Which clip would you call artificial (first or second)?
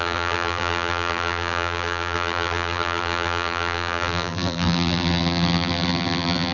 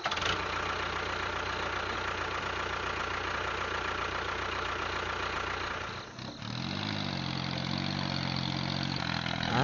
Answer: first